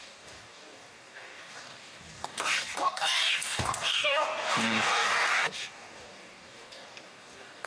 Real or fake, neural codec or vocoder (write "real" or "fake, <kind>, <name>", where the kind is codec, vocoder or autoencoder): fake, codec, DAC